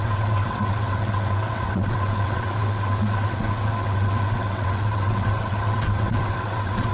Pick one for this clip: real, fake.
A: fake